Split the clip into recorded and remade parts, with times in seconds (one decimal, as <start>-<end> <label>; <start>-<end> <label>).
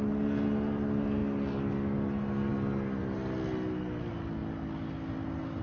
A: 0.0-5.6 recorded